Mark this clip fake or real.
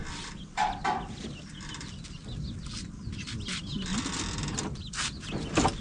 real